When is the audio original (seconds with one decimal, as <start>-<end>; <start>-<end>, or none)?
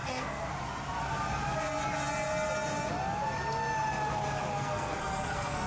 0.5-4.5